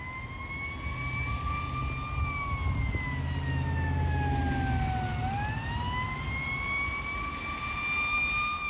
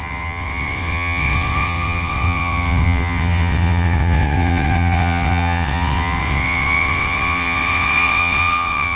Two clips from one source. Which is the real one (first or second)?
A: first